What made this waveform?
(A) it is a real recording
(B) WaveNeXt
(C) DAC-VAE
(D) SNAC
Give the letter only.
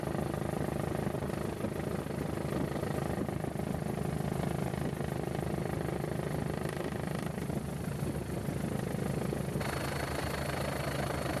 A